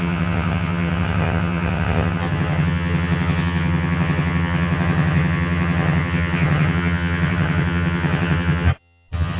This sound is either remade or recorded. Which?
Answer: remade